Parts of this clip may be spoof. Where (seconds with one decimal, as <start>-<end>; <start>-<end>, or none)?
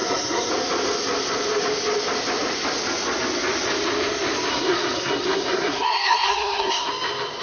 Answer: 0.0-0.5; 4.5-6.9